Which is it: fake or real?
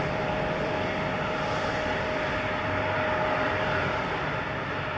fake